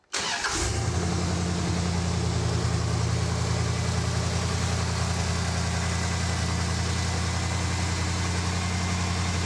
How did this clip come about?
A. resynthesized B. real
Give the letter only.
B